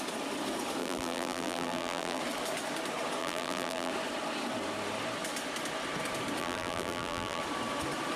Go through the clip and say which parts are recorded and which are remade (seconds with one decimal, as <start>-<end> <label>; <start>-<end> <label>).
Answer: 0.0-0.8 recorded; 0.8-2.2 remade; 2.2-3.2 recorded; 3.2-3.9 remade; 3.9-6.4 recorded; 6.4-7.4 remade; 7.4-8.2 recorded